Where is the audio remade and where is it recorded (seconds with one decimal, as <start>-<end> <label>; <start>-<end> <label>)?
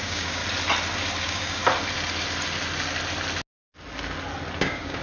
0.0-0.4 remade; 0.4-1.2 recorded; 1.2-1.6 remade; 1.6-4.6 recorded; 4.6-5.0 remade